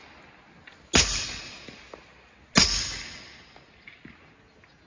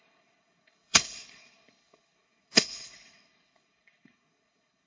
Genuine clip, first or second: first